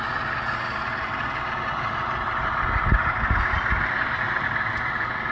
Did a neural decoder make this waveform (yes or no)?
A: no